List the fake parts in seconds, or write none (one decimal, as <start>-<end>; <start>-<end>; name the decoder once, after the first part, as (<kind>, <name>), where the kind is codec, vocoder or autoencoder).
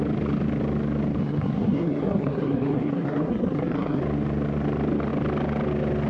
1.2-4.0 (codec, SNAC)